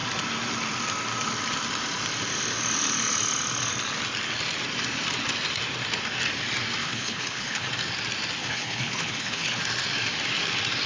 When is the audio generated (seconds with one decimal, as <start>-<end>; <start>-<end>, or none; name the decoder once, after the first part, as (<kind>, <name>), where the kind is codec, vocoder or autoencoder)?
6.8-7.7 (codec, HILCodec); 8.4-9.6